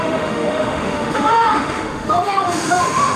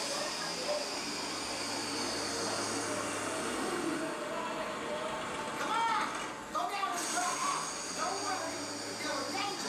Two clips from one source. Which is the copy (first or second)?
first